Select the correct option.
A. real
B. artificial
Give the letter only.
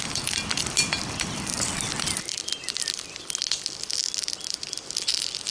A